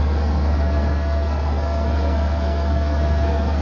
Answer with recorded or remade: remade